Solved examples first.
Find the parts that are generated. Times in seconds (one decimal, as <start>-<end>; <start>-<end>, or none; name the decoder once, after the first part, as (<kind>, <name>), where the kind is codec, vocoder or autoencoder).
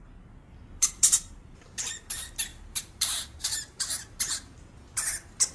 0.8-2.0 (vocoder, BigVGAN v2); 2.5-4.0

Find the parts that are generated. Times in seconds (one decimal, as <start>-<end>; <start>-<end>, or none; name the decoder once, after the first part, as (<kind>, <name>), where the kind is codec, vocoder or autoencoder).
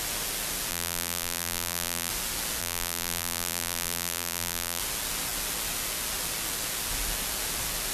0.7-2.1 (vocoder, BigVGAN v2); 2.6-4.8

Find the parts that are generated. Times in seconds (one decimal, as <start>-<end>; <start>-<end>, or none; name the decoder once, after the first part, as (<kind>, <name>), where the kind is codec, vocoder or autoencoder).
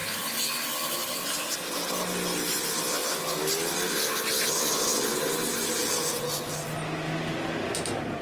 0.0-1.9 (vocoder, BigVGAN v2)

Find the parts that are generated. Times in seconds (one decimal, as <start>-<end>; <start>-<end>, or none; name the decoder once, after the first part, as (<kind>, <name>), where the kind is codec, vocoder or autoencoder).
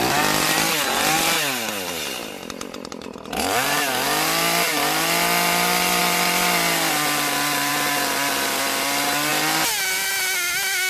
6.0-7.7 (vocoder, BigVGAN v2)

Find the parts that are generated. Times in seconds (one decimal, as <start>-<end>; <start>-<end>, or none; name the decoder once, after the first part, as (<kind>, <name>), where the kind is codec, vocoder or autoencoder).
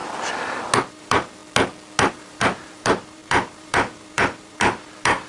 0.9-1.4 (vocoder, BigVGAN v2); 2.1-5.3